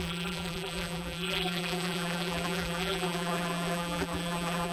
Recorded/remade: remade